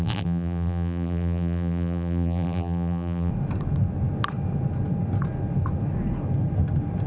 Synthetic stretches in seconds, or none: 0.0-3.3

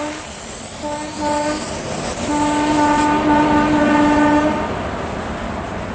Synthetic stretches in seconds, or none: none

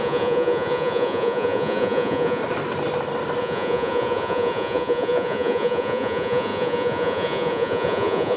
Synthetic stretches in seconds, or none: 0.0-2.4; 3.4-8.4

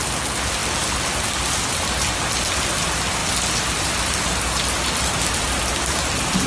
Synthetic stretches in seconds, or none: none

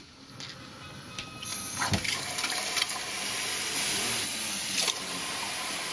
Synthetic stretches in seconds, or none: none